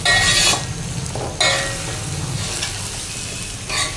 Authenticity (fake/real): real